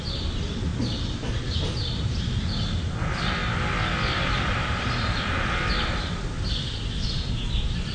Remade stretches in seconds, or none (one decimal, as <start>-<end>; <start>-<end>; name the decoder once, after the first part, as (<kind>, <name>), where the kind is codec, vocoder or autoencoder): none